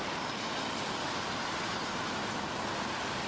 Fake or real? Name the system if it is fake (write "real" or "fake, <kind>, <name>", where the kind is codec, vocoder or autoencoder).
real